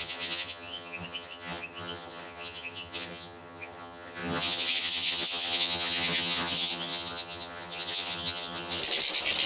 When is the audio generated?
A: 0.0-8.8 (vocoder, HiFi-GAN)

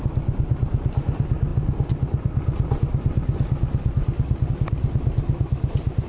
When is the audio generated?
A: none

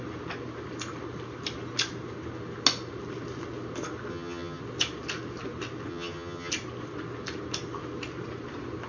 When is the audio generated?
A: 4.1-4.6 (vocoder, HiFi-GAN); 5.9-6.5

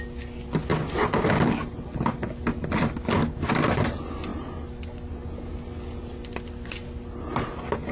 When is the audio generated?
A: none